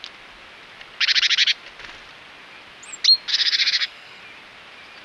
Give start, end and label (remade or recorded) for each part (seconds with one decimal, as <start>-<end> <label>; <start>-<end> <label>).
0.0-3.3 recorded; 3.3-4.2 remade; 4.2-5.0 recorded